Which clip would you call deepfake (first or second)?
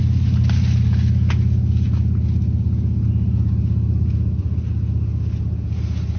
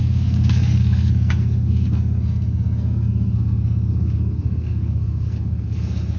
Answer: second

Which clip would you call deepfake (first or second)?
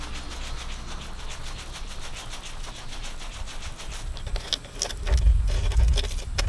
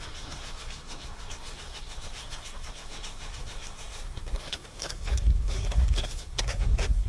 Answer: second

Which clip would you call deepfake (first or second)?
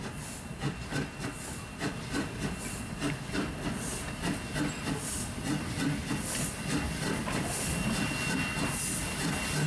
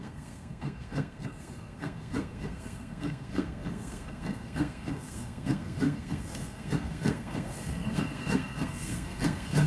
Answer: second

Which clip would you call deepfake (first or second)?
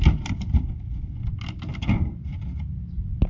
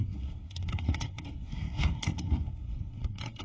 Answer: second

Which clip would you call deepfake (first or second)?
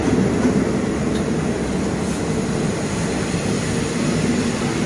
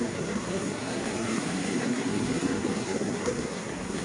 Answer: second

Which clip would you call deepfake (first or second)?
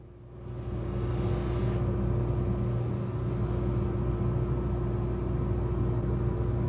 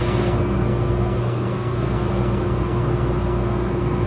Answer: second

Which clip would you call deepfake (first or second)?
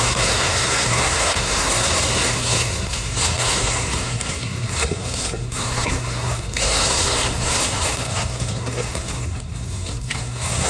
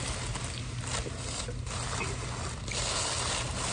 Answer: first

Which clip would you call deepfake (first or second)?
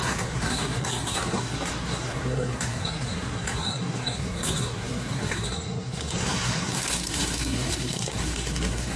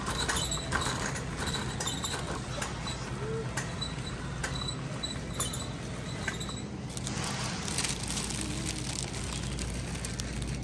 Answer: first